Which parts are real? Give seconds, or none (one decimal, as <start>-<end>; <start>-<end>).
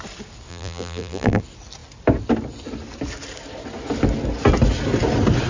0.0-0.5; 1.4-5.5